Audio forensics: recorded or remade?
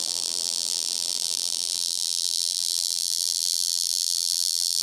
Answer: remade